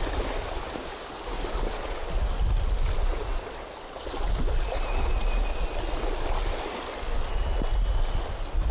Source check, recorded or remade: recorded